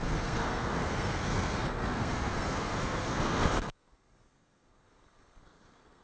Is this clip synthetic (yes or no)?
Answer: yes